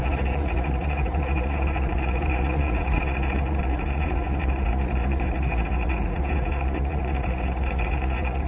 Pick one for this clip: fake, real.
fake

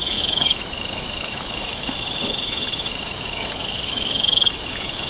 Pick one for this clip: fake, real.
fake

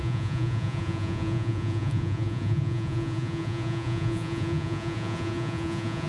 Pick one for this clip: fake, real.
fake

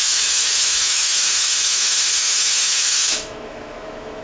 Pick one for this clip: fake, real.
fake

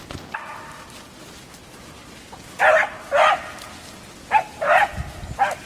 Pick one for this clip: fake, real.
real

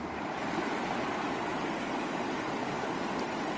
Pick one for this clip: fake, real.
real